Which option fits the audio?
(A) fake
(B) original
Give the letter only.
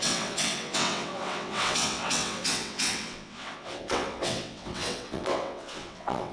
A